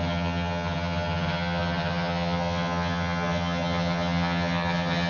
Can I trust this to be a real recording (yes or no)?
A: no